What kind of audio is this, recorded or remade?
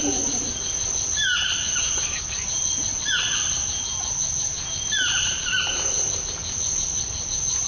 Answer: recorded